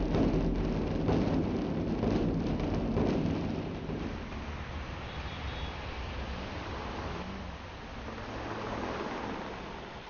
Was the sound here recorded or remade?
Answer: recorded